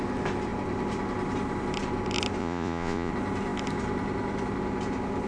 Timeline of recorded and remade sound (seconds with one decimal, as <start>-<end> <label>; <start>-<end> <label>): 0.0-2.4 recorded; 2.4-3.1 remade; 3.1-5.3 recorded